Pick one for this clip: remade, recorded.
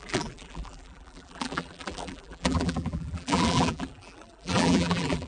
remade